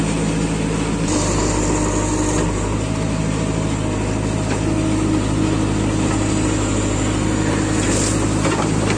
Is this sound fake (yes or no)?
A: no